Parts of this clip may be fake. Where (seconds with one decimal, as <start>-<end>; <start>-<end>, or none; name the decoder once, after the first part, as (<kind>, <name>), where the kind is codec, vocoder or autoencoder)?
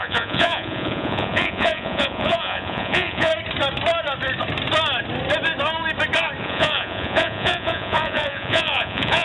0.0-3.3 (vocoder, Vocos); 6.4-9.2